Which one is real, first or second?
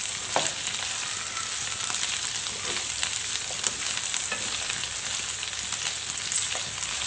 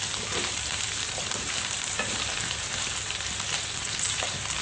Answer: first